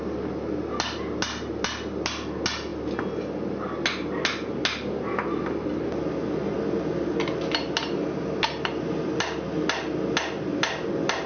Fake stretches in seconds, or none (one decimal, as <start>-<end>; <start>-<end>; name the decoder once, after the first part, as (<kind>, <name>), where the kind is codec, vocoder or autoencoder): none